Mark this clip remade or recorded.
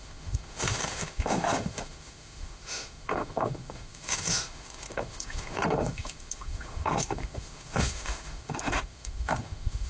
remade